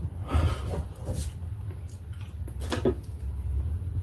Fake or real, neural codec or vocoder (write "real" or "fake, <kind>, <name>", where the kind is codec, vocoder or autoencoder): real